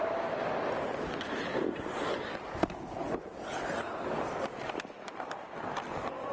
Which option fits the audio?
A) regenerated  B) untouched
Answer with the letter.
B